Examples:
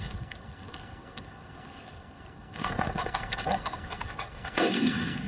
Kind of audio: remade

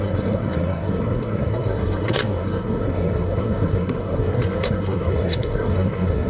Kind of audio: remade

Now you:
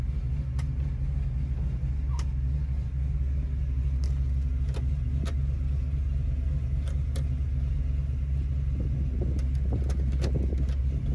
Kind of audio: recorded